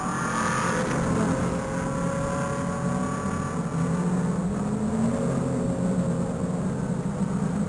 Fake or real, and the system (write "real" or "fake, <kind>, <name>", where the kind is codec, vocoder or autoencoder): real